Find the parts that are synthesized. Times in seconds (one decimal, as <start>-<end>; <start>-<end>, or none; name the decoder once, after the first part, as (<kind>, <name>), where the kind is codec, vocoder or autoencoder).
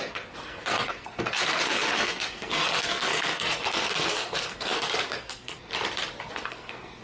0.0-5.7 (codec, SNAC); 6.3-7.0